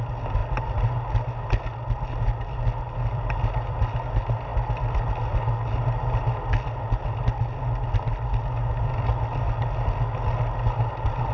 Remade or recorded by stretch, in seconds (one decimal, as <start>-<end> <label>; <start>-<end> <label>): 0.0-11.3 recorded